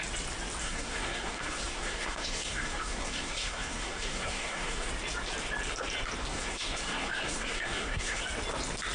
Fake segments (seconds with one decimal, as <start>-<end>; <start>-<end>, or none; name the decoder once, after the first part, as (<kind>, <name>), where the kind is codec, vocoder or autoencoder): 0.6-4.9 (codec, SNAC); 6.3-8.2